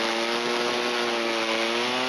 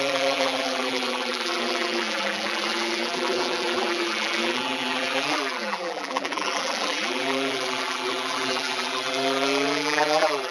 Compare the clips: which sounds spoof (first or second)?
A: second